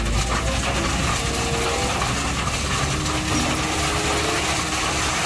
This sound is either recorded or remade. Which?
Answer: recorded